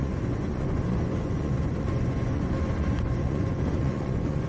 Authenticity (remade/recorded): remade